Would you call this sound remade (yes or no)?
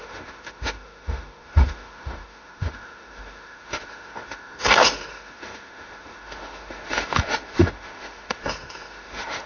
yes